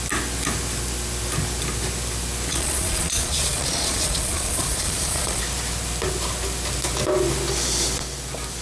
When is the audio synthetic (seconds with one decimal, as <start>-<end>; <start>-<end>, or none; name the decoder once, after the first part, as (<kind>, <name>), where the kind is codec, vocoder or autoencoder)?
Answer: 2.5-5.4 (vocoder, Vocos)

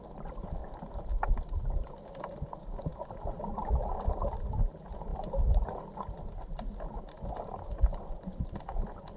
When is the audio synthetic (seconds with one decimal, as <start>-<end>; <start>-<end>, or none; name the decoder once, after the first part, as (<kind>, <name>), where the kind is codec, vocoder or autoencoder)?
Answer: 0.6-1.9 (vocoder, BigVGAN v2); 2.9-3.4